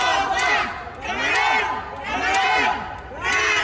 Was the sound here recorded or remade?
recorded